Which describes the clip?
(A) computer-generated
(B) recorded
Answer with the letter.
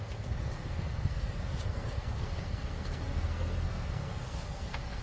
A